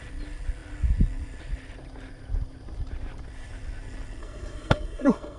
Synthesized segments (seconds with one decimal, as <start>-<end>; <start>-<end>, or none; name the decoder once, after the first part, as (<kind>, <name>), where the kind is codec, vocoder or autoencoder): 4.2-5.4 (codec, SNAC)